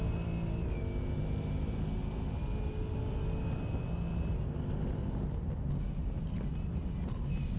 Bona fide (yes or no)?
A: yes